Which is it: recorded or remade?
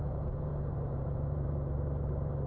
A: remade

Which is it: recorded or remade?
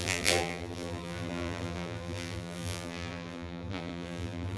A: remade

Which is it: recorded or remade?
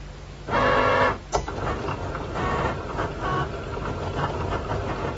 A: recorded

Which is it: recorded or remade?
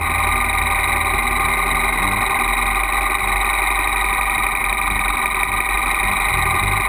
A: recorded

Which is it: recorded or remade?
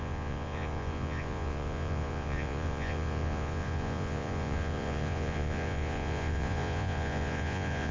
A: remade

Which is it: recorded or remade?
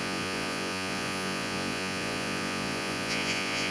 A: remade